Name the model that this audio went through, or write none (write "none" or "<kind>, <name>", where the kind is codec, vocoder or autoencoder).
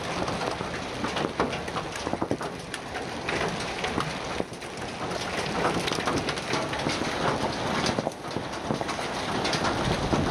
none